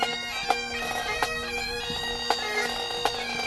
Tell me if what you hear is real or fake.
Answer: real